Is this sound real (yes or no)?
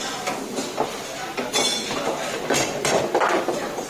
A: yes